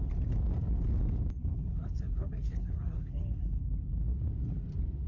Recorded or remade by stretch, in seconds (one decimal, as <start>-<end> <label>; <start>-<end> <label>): 0.0-1.4 recorded; 1.4-3.6 remade; 3.6-5.1 recorded